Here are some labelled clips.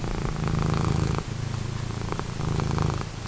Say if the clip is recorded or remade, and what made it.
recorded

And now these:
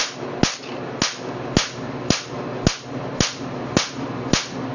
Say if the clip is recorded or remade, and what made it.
recorded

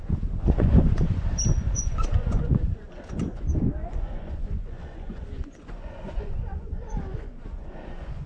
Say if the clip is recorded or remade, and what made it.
remade, vocoder, Vocos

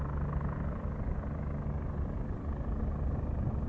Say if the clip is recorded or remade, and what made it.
recorded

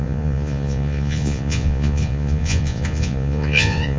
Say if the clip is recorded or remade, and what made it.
remade, vocoder, Vocos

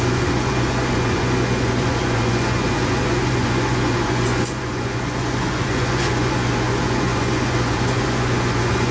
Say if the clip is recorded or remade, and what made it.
remade, vocoder, Vocos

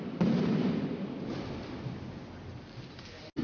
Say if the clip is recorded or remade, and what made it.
recorded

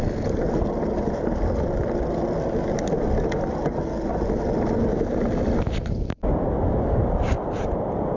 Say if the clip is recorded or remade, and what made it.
recorded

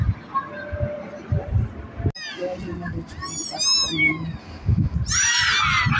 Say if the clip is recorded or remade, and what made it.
recorded